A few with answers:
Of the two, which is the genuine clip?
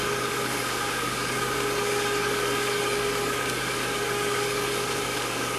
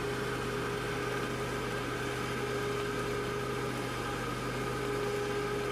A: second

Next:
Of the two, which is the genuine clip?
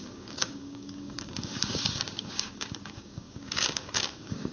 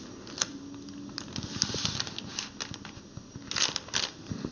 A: second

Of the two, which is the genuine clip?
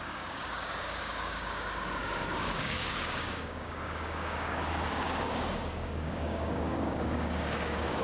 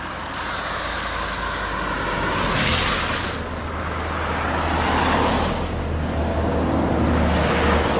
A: second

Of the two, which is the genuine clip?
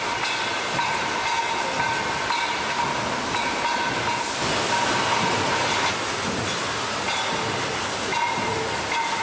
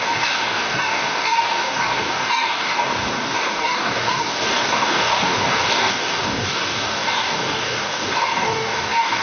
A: first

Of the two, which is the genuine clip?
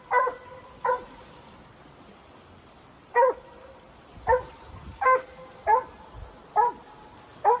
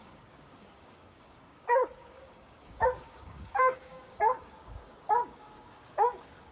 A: first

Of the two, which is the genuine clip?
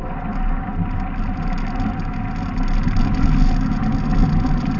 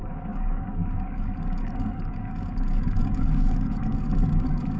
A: first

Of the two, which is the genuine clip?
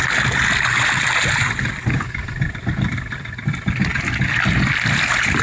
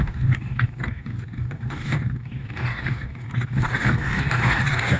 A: first